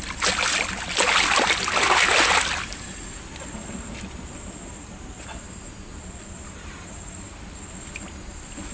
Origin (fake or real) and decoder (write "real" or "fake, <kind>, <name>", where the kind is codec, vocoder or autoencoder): real